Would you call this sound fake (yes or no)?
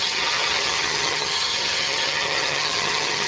yes